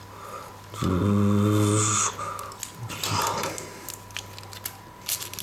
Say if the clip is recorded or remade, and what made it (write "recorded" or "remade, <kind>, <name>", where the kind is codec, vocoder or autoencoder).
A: recorded